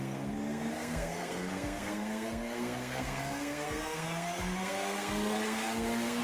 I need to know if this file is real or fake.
fake